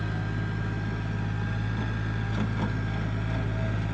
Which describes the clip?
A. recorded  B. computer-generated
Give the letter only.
A